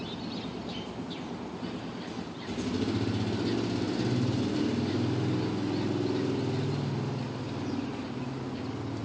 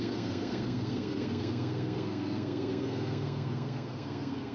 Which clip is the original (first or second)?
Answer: first